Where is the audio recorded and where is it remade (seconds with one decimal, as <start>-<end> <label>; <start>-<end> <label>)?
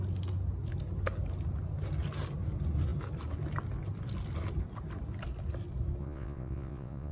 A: 0.0-6.0 recorded; 6.0-7.1 remade